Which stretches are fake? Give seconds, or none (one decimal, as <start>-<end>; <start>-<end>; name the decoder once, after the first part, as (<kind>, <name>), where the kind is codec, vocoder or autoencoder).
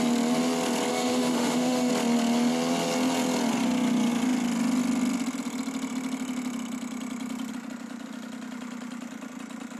0.9-1.9 (autoencoder, DAC-VAE)